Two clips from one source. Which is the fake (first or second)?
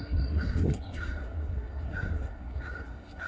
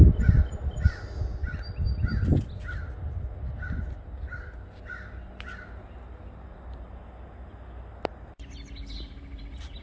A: first